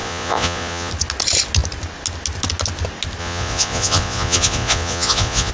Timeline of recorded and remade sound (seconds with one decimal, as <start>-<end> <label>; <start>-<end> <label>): 0.0-0.9 remade; 0.9-3.2 recorded; 3.2-5.5 remade